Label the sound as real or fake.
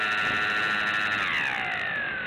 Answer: real